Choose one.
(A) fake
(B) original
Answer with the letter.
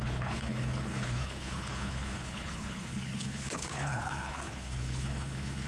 A